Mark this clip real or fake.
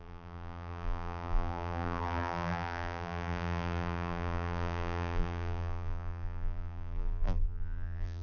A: fake